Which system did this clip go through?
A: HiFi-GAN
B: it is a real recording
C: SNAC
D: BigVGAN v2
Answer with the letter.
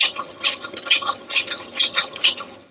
A